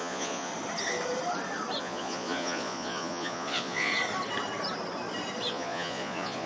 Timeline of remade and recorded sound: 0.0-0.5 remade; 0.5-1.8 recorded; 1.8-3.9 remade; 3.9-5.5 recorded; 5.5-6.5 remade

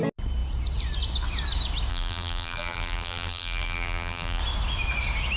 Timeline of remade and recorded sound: 0.0-1.9 recorded; 1.9-4.4 remade; 4.4-5.4 recorded

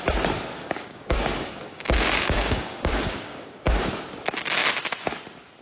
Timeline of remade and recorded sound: 0.0-0.5 recorded; 0.5-3.9 remade; 3.9-5.6 recorded

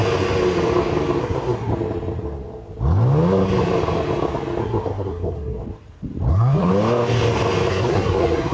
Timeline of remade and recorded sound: 0.0-1.2 recorded; 1.2-1.7 remade; 1.7-4.6 recorded; 4.6-5.6 remade; 5.6-6.3 recorded; 6.3-6.7 remade; 6.7-7.7 recorded; 7.7-8.5 remade

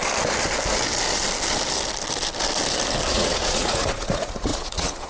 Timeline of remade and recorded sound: 0.0-3.1 recorded; 3.1-5.1 remade

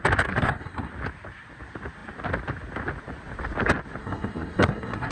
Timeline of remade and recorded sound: 0.0-0.4 recorded; 0.4-0.9 remade; 0.9-4.0 recorded; 4.0-5.1 remade